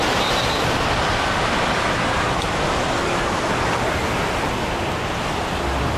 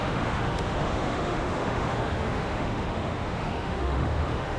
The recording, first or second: first